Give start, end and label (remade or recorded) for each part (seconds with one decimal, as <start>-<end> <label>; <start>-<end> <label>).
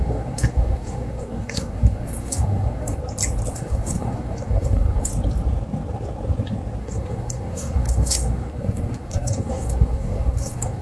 0.0-3.0 remade; 3.0-3.5 recorded; 3.5-5.1 remade; 5.1-6.8 recorded; 6.8-10.8 remade